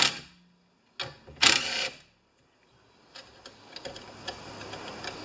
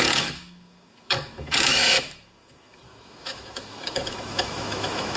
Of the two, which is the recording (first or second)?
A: first